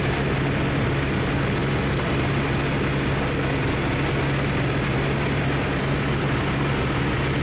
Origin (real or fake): real